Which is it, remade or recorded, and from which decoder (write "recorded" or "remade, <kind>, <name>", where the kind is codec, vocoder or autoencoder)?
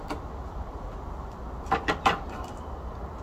recorded